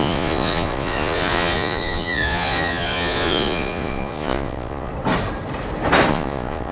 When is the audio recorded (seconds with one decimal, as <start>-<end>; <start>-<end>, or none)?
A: 4.9-6.1